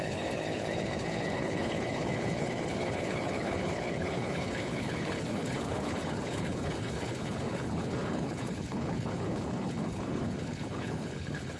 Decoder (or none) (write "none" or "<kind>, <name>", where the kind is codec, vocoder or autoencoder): codec, HILCodec